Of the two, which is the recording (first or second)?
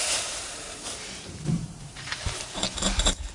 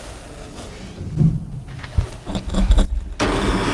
second